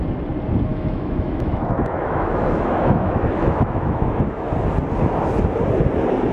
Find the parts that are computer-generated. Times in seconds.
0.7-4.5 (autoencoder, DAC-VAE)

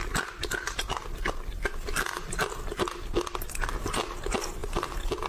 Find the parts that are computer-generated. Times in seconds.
none

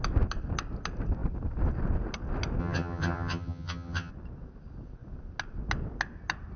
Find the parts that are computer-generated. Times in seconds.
2.6-4.1 (vocoder, HiFi-GAN)

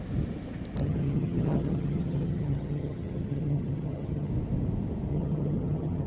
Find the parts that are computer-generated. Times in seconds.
0.8-4.3 (vocoder, HiFi-GAN); 5.1-6.1

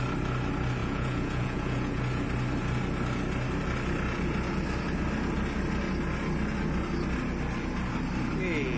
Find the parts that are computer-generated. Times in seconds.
0.8-2.0 (vocoder, Vocos)

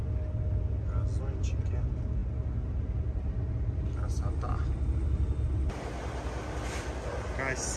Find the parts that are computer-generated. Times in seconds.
none

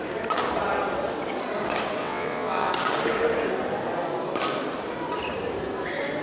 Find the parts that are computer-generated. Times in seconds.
2.0-2.7 (vocoder, WaveNeXt)

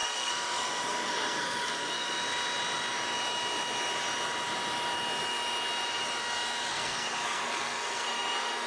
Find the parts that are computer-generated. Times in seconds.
0.0-2.2 (codec, SNAC); 6.7-8.7